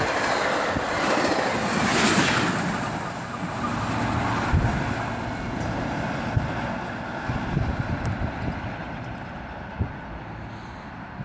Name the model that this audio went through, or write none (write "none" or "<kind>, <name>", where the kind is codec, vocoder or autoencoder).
none